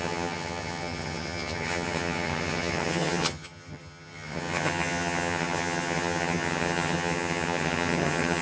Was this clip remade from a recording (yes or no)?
yes